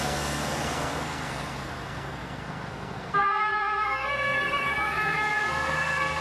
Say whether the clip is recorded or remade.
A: remade